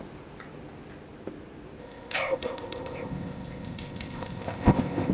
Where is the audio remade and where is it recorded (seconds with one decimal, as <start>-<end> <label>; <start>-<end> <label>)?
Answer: 0.0-1.8 recorded; 1.8-5.1 remade